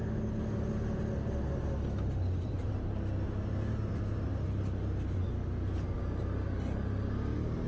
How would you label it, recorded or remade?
recorded